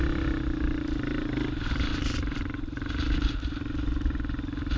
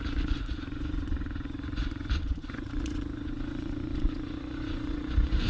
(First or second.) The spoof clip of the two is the second